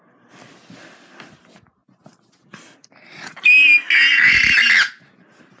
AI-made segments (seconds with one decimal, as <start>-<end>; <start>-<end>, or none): none